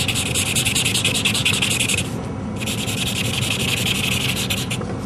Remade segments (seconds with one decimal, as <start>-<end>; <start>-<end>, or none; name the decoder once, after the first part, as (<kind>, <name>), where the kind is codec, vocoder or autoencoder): none